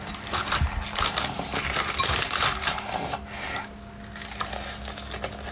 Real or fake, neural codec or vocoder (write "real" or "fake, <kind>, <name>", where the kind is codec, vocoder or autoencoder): real